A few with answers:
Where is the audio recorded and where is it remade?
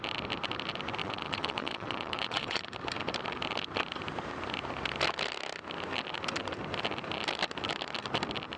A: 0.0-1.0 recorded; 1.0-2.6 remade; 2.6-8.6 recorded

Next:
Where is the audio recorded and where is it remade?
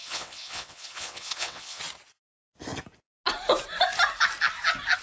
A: 0.0-1.8 remade; 1.8-5.0 recorded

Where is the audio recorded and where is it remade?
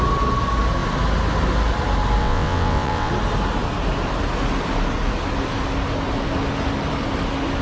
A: 0.0-2.2 recorded; 2.2-3.1 remade; 3.1-7.6 recorded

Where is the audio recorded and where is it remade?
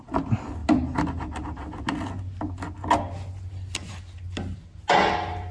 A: 0.0-5.5 recorded